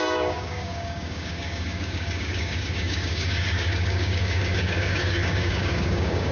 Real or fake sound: fake